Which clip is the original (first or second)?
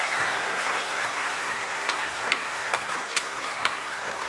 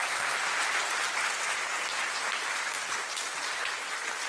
second